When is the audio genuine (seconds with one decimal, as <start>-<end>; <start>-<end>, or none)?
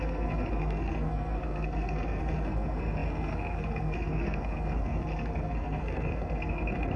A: none